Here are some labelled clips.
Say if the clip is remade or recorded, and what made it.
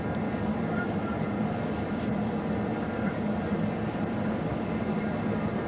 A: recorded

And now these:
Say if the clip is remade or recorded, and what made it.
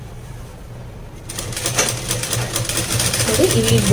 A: recorded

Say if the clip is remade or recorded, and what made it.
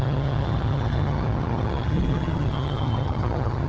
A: remade, vocoder, HiFi-GAN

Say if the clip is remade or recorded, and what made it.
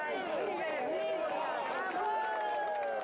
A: recorded